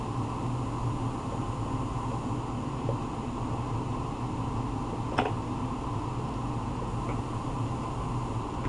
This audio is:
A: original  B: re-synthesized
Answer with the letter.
A